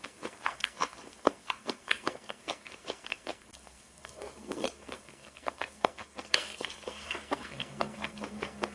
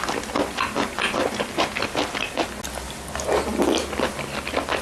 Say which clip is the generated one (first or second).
first